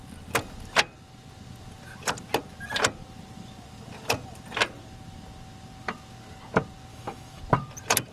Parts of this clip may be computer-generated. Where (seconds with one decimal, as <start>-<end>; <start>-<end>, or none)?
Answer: 6.9-7.4